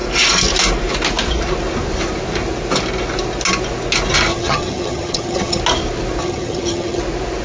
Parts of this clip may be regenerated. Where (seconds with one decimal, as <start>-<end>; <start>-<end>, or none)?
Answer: 4.3-5.6; 6.2-7.0